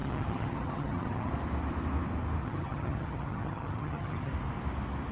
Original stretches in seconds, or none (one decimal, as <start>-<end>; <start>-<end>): 1.3-2.4; 4.3-5.1